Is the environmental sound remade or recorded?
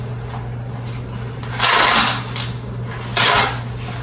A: recorded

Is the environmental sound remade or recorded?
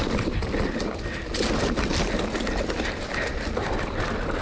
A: recorded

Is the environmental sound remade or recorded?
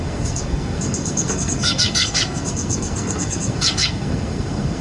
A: remade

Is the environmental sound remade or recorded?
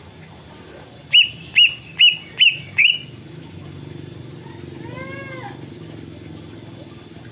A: recorded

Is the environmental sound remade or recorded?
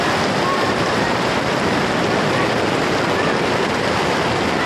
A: recorded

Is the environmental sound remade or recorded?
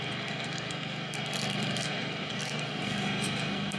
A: remade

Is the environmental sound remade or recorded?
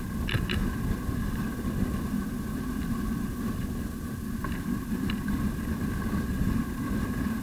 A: recorded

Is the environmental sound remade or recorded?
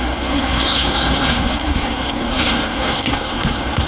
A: remade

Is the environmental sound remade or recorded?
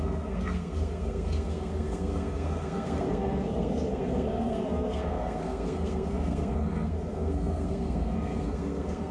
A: remade